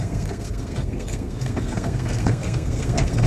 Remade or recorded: remade